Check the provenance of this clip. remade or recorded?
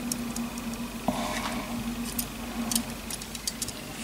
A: recorded